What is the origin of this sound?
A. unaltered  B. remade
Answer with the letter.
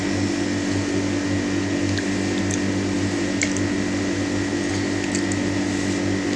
A